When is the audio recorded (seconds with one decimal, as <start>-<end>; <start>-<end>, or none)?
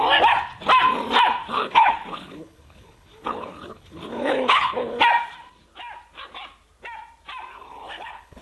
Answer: 0.0-1.4; 5.0-7.5